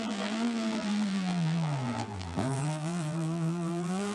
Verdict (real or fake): fake